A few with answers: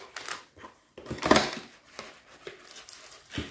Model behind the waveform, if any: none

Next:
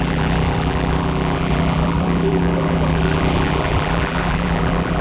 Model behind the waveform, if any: vocoder, BigVGAN v2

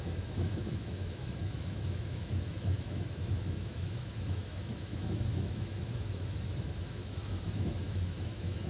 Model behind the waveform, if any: autoencoder, DAC-VAE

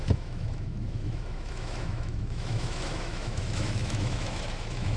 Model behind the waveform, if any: autoencoder, DAC-VAE